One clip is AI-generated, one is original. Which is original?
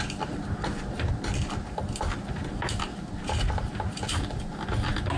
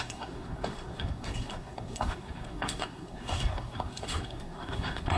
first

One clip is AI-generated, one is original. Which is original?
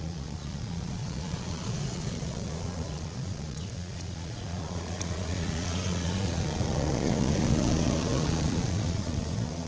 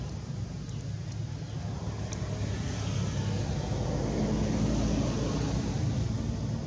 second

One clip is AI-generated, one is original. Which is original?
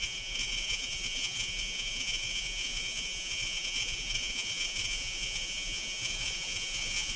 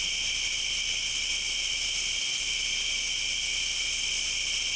second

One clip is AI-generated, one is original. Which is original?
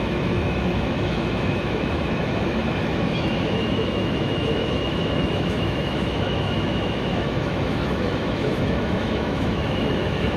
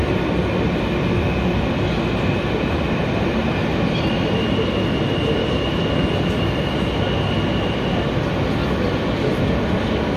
second